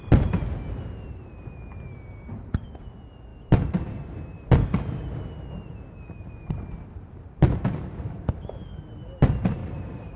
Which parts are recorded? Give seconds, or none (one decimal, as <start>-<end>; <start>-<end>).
0.0-9.6